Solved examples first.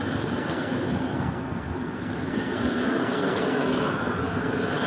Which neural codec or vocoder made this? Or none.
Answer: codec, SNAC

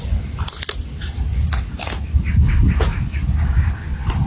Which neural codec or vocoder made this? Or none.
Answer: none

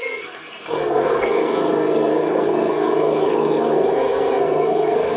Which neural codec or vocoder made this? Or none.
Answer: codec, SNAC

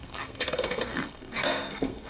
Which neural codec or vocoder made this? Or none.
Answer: codec, SNAC